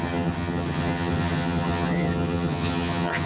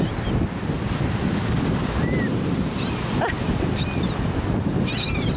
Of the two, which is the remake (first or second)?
first